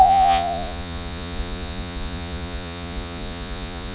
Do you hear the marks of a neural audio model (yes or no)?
yes